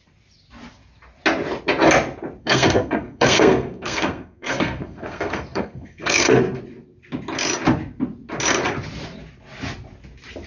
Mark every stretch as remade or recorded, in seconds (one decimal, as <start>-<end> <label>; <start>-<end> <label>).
0.0-2.4 recorded; 2.4-6.6 remade; 6.6-10.5 recorded